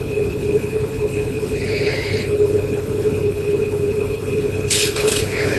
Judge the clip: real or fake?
fake